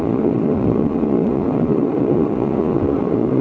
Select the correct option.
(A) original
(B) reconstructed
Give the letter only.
B